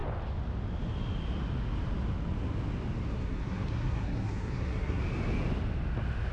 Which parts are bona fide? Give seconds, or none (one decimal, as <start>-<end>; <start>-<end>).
0.0-3.1; 5.0-6.3